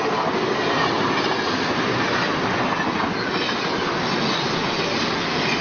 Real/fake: real